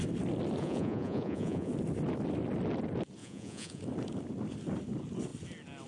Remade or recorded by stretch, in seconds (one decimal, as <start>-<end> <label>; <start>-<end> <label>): 0.0-0.6 recorded; 0.6-1.7 remade; 1.7-3.2 recorded; 3.2-3.8 remade; 3.8-5.9 recorded

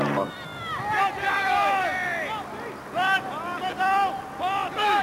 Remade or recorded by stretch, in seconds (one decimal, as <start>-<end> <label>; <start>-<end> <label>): 0.0-5.0 recorded